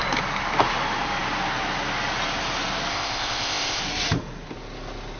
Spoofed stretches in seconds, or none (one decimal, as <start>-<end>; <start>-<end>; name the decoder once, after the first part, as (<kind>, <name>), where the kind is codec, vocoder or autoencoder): 2.9-3.8 (codec, ZipCodec)